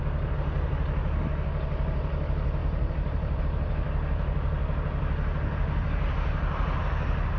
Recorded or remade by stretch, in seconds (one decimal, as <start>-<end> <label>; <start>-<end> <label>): 0.0-2.6 recorded; 2.6-3.4 remade; 3.4-7.4 recorded